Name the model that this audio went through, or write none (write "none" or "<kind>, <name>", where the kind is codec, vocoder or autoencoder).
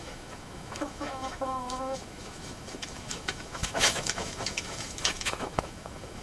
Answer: autoencoder, DAC-VAE